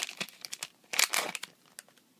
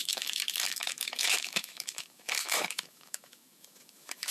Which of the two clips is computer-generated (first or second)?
second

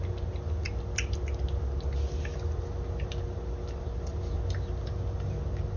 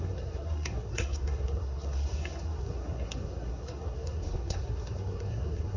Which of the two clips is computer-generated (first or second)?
second